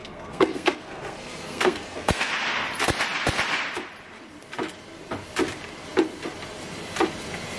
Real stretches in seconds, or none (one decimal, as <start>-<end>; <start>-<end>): 2.3-7.6